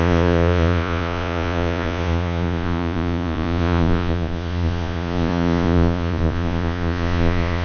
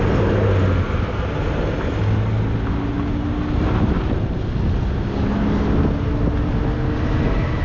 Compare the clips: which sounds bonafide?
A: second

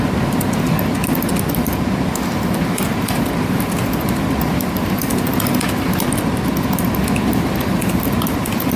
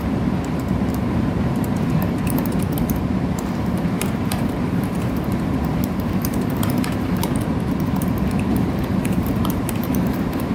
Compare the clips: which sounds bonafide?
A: first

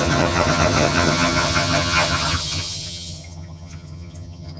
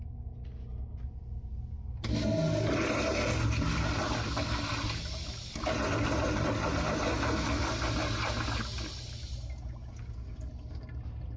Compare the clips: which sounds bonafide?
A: second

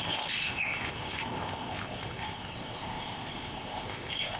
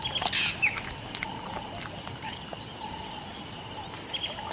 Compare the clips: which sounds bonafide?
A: second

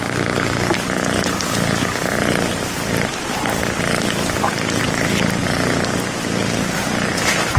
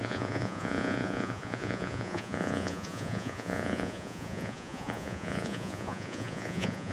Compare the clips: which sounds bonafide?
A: first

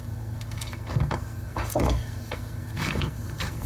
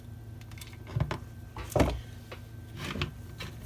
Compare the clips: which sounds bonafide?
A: second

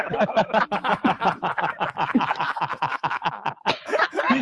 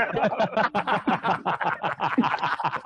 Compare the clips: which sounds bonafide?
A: second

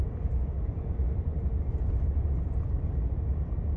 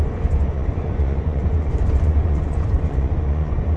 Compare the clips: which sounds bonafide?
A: first